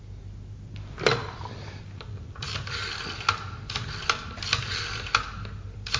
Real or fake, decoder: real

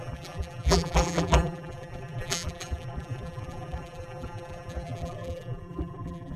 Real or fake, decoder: fake, vocoder, BigVGAN v2